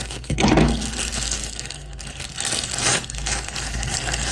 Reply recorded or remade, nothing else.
remade